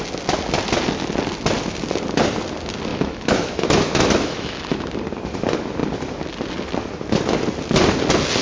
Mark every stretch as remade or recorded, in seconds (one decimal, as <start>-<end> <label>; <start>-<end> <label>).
0.0-2.9 recorded; 2.9-4.8 remade; 4.8-8.4 recorded